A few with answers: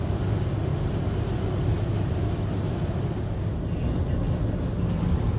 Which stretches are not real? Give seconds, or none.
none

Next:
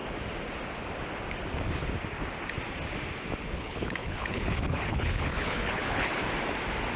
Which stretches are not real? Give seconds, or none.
3.6-6.2 (codec, HILCodec)

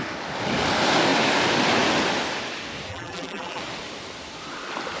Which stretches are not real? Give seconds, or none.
2.9-3.6 (vocoder, BigVGAN v2)

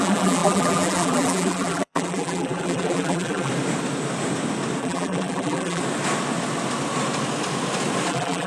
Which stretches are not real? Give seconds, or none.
0.0-3.5 (vocoder, BigVGAN v2); 4.8-5.8; 8.1-8.5

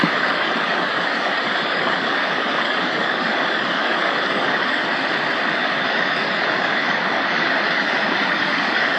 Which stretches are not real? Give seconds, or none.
0.0-4.8 (codec, DAC); 5.5-9.0

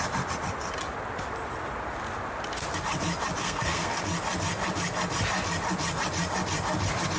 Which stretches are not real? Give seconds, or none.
3.4-4.0 (codec, SNAC)

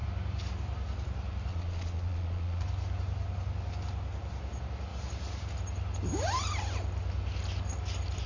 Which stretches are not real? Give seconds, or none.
1.5-2.6 (vocoder, Vocos)